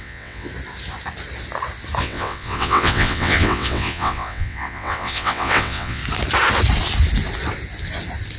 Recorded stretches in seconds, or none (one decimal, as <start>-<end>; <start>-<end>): 0.5-2.0; 6.0-8.4